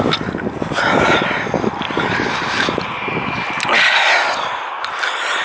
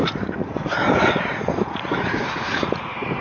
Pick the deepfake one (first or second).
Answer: second